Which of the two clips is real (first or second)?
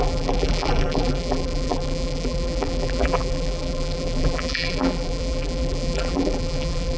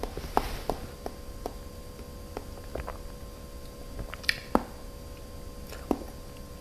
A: second